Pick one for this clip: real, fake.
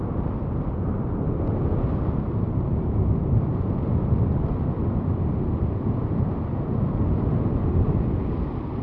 real